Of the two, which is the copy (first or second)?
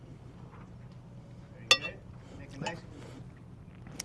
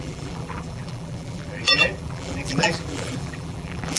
second